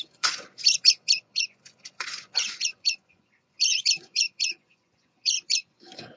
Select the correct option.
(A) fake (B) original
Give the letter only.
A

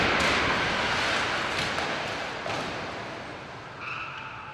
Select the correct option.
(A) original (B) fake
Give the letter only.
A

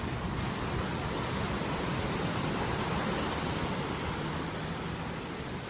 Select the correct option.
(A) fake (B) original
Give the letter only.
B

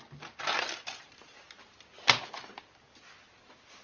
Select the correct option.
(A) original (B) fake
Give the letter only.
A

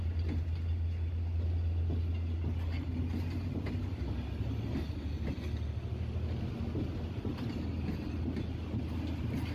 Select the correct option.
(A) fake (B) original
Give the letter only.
B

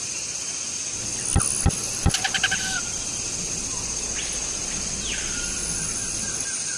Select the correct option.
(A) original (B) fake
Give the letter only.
A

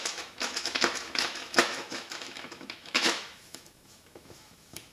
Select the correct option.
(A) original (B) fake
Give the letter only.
B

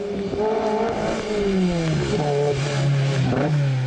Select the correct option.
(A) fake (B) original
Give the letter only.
B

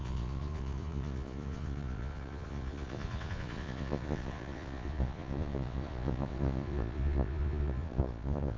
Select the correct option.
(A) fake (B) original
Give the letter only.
A